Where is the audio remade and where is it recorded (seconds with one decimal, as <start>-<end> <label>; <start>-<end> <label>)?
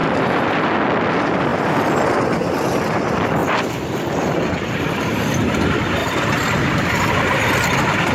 0.0-0.7 remade; 0.7-1.5 recorded; 1.5-2.2 remade; 2.2-3.4 recorded; 3.4-5.6 remade; 5.6-6.0 recorded; 6.0-7.1 remade; 7.1-8.1 recorded